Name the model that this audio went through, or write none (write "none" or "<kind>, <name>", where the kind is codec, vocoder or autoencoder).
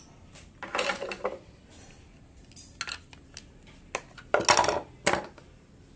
none